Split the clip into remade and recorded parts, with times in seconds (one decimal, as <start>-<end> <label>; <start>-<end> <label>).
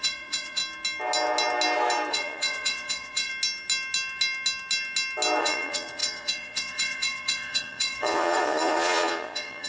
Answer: 0.0-0.6 remade; 0.6-2.1 recorded; 2.1-3.3 remade; 3.3-5.4 recorded; 5.4-9.7 remade